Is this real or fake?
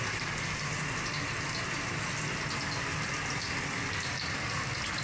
real